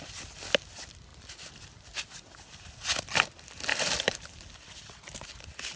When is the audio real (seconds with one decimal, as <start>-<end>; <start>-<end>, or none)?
0.0-3.7; 4.4-5.8